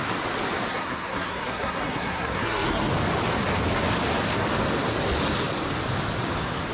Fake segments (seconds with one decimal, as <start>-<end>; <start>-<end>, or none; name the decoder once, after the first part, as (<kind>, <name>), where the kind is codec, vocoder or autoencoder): 0.7-2.9 (codec, SNAC)